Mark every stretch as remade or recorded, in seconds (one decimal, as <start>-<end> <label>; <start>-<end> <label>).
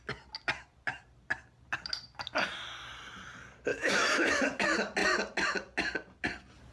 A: 0.0-3.7 recorded; 3.7-4.3 remade; 4.3-6.7 recorded